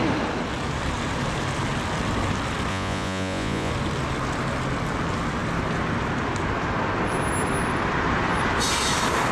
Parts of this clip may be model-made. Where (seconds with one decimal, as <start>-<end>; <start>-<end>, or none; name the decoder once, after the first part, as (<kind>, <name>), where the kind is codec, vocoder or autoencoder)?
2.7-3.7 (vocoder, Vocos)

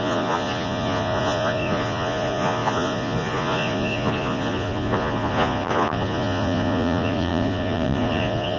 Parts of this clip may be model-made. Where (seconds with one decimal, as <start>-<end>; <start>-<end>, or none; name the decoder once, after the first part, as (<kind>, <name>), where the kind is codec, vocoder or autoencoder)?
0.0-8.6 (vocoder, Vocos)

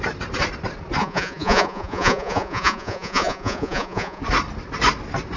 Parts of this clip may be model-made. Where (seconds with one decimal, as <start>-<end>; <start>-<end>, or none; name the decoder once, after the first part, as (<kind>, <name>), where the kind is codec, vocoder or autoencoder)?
1.0-4.2 (vocoder, Vocos)

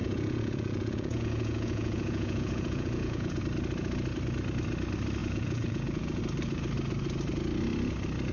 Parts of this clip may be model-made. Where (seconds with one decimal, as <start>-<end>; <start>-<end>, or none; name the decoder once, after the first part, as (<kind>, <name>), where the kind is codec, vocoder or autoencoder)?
0.0-3.4 (vocoder, Vocos); 5.2-6.2

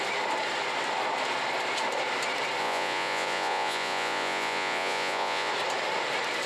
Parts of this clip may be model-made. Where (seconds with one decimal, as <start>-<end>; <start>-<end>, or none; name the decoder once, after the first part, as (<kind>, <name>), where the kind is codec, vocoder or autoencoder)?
2.6-5.5 (vocoder, Vocos)

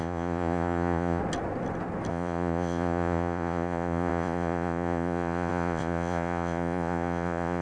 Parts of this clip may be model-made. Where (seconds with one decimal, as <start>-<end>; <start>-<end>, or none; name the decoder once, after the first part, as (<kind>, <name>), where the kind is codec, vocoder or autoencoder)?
0.0-1.2 (vocoder, Vocos); 2.1-7.6